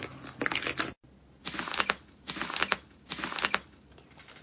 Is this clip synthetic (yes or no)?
no